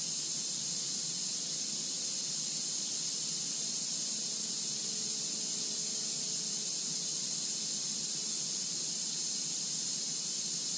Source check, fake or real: real